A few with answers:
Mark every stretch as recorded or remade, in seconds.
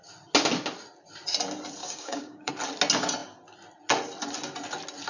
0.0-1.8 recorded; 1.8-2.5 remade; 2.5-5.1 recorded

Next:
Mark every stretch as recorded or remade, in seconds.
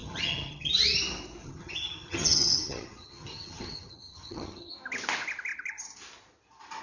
0.0-0.7 remade; 0.7-1.4 recorded; 1.4-4.7 remade; 4.7-6.8 recorded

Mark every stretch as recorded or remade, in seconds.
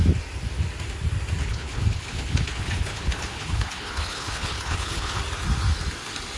0.0-1.4 recorded; 1.4-5.2 remade; 5.2-6.4 recorded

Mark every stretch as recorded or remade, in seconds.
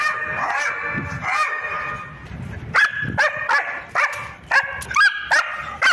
0.0-5.9 recorded